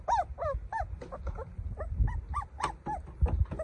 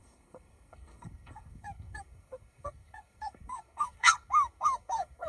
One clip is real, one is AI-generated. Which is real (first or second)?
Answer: first